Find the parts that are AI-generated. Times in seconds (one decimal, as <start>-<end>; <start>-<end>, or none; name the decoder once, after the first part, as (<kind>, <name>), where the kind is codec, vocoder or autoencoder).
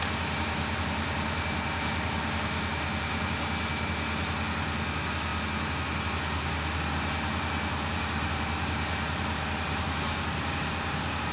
none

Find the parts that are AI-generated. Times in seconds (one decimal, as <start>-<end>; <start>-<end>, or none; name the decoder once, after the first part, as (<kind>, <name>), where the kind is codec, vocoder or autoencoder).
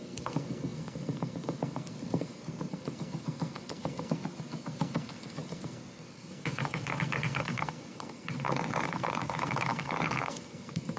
0.0-11.0 (codec, SNAC)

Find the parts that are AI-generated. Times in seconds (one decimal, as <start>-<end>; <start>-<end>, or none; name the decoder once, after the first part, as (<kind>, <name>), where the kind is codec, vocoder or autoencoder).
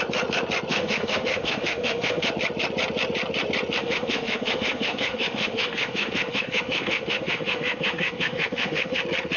0.7-2.3 (autoencoder, DAC-VAE); 3.8-9.0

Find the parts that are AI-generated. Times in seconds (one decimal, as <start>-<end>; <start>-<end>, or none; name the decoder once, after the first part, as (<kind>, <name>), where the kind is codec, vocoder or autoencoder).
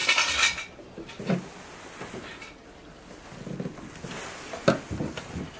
none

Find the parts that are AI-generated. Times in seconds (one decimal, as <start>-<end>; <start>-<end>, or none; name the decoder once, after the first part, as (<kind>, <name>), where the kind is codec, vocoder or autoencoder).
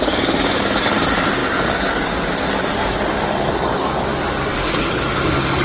0.0-5.6 (codec, DAC)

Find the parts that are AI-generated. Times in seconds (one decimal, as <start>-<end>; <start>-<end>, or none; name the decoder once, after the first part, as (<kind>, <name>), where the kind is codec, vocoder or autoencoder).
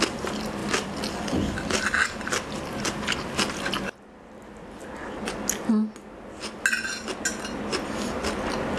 none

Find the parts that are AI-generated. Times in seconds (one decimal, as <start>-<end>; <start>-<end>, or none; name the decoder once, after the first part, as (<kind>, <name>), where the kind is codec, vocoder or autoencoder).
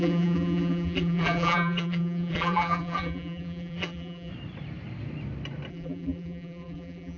0.0-4.3 (vocoder, BigVGAN v2); 5.7-7.2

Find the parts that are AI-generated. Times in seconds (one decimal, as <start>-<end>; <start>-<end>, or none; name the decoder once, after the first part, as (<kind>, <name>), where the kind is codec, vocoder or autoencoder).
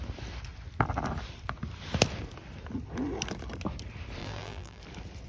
4.2-4.8 (vocoder, BigVGAN v2)